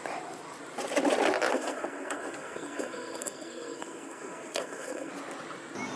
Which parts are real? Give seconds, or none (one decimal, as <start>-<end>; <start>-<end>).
0.0-1.5; 5.1-6.0